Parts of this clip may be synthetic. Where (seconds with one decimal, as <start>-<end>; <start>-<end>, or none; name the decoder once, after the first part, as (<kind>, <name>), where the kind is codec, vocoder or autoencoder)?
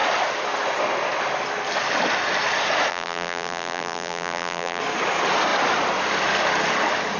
2.9-4.8 (vocoder, BigVGAN v2)